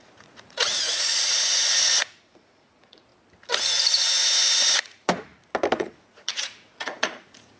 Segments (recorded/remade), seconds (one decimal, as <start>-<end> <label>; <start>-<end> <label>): 0.0-3.1 remade; 3.1-4.7 recorded; 4.7-5.3 remade; 5.3-5.8 recorded; 5.8-7.6 remade